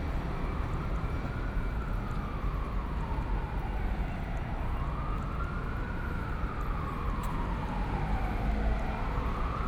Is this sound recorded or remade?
recorded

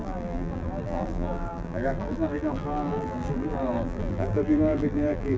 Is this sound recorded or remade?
remade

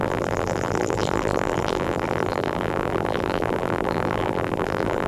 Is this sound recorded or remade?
remade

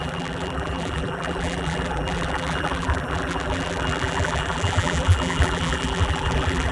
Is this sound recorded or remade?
remade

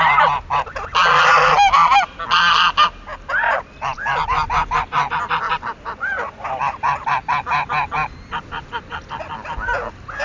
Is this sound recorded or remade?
recorded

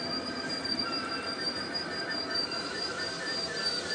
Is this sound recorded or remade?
remade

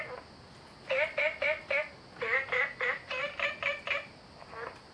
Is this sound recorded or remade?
recorded